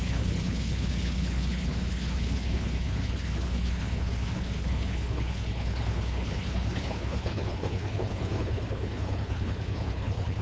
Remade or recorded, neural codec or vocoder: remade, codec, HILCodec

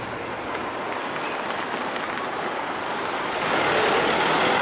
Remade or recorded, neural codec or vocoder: recorded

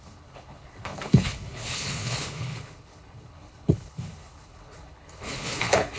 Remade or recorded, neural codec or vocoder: remade, codec, HILCodec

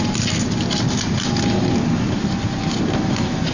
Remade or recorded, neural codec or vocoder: recorded